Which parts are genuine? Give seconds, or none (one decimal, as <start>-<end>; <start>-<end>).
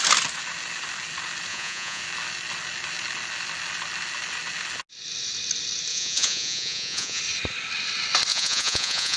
0.0-1.5; 2.0-5.9; 7.2-8.3